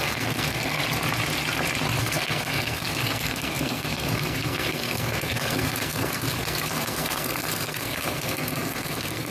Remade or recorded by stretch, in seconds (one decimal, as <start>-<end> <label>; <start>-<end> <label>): 0.0-0.8 remade; 0.8-2.0 recorded; 2.0-9.3 remade